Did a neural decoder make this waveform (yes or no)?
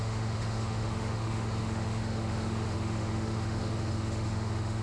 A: yes